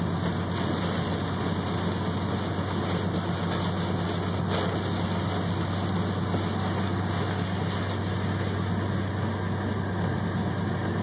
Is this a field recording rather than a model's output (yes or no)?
yes